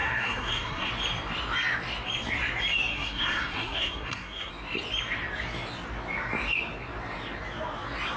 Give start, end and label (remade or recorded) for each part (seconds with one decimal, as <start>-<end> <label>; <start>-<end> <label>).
0.0-0.9 remade; 0.9-2.9 recorded; 2.9-4.5 remade; 4.5-8.2 recorded